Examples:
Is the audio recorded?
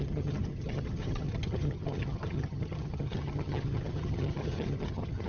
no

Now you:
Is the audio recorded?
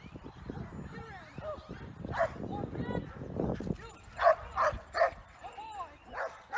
yes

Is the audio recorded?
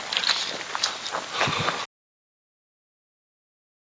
yes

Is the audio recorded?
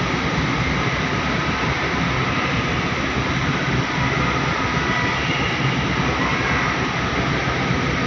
yes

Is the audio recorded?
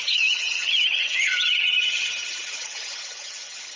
no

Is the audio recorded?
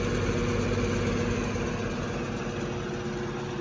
yes